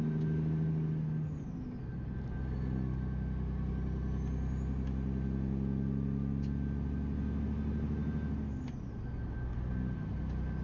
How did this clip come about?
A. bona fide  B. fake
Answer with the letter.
A